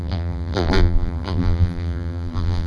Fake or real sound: fake